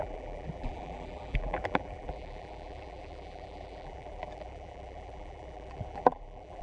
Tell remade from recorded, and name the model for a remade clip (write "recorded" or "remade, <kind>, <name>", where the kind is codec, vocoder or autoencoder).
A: remade, vocoder, BigVGAN v2